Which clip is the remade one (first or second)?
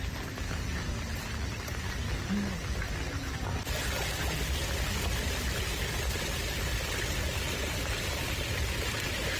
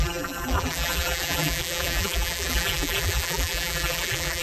second